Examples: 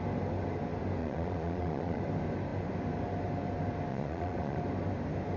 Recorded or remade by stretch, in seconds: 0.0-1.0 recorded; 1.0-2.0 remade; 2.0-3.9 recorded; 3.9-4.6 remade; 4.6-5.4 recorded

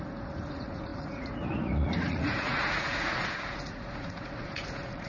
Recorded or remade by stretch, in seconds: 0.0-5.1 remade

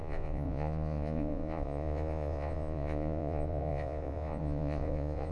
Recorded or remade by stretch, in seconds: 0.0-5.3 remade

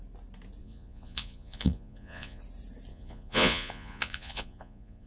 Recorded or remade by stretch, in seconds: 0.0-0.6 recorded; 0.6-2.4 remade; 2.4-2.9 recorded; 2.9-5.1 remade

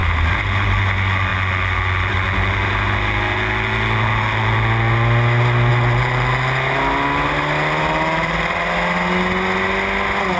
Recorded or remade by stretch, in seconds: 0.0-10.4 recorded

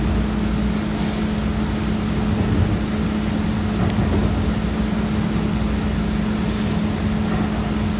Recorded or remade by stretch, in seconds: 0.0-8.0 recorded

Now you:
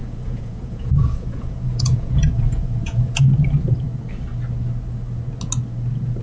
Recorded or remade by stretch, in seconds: 0.0-3.3 remade; 3.3-6.2 recorded

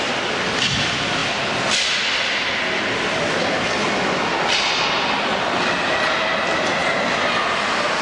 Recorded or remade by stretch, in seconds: 0.0-8.0 recorded